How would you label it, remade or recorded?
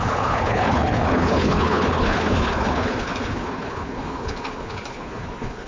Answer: remade